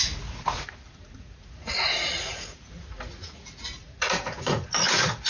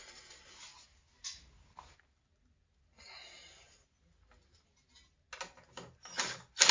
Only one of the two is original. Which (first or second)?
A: second